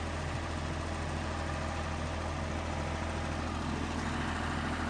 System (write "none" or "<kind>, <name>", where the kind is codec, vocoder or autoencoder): none